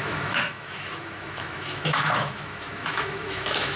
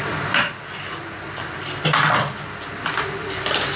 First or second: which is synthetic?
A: first